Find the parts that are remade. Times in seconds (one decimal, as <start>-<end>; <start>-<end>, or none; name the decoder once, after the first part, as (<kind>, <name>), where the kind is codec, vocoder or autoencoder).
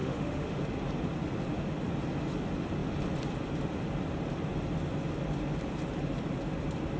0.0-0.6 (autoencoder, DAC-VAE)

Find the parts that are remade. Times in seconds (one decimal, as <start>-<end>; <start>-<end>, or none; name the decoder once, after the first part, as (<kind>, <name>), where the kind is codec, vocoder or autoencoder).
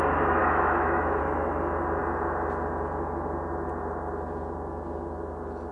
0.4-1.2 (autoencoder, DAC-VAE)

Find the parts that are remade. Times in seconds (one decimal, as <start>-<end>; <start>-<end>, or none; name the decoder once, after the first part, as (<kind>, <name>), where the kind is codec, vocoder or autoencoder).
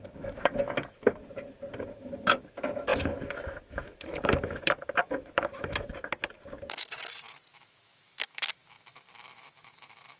0.0-1.2 (autoencoder, DAC-VAE); 1.8-5.9; 7.5-10.2